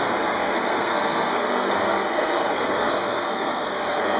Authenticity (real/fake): fake